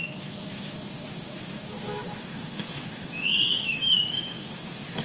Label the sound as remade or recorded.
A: remade